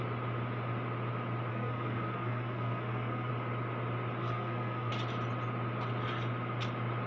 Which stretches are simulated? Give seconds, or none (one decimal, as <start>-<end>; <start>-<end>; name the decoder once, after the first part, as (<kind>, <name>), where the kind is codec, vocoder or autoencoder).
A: 1.5-3.3 (codec, SNAC); 4.2-4.9